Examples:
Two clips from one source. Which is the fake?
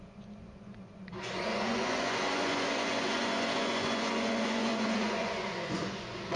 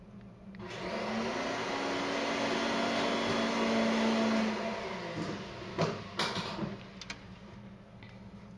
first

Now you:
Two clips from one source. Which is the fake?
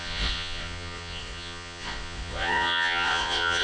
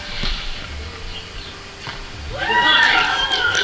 first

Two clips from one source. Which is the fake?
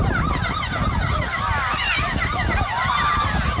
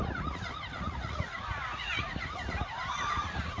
second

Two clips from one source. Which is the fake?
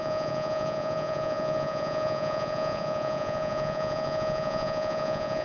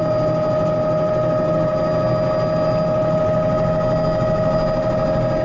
first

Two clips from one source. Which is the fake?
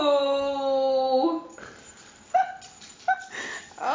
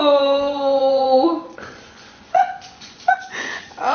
second